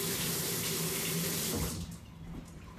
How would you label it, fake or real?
real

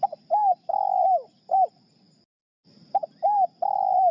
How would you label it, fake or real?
real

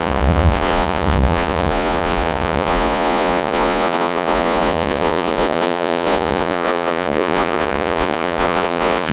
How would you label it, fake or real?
fake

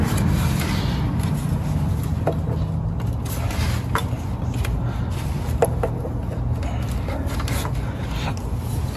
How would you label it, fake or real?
real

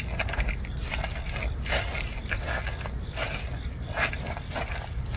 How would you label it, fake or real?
real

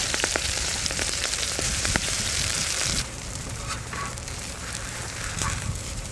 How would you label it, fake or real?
fake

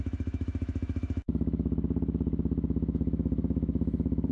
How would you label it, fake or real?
fake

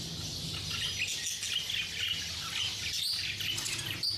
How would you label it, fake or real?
real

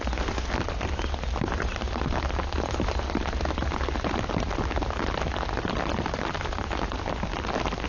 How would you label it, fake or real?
real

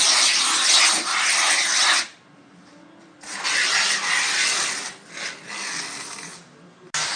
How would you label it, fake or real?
real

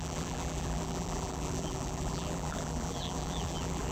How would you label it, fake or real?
fake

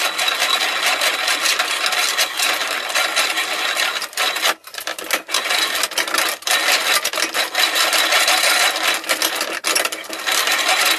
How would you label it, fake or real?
real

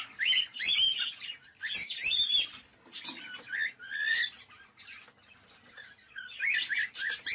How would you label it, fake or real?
real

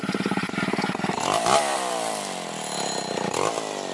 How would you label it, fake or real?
real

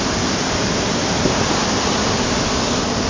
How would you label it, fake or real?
real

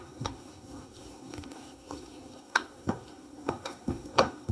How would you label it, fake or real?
fake